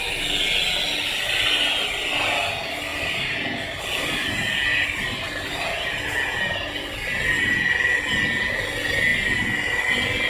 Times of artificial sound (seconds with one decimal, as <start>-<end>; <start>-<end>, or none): 2.9-3.8; 4.7-5.5